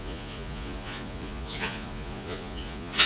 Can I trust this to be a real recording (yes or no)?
no